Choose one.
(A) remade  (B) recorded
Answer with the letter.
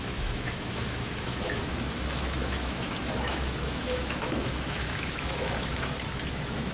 A